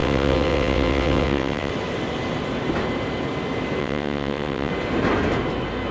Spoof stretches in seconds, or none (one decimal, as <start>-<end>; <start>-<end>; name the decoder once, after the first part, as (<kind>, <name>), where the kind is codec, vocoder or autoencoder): 0.0-1.7 (vocoder, WaveNeXt); 3.8-4.7